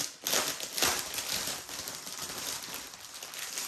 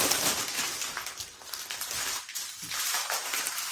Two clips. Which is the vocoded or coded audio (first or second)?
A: second